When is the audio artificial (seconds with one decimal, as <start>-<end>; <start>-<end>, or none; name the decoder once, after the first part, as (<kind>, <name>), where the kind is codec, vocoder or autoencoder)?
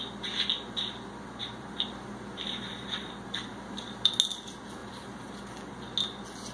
1.4-4.1 (vocoder, BigVGAN v2)